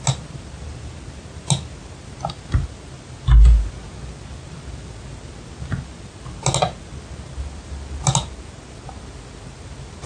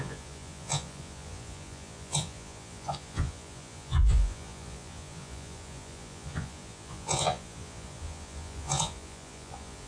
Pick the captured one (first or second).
first